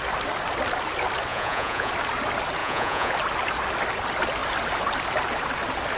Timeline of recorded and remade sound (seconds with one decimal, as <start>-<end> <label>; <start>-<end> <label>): 0.0-1.3 recorded; 1.3-1.9 remade; 1.9-2.6 recorded; 2.6-3.1 remade; 3.1-6.0 recorded